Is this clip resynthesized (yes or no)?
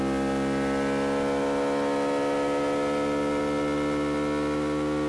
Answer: no